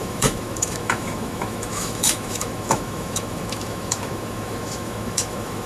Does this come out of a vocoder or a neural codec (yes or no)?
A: yes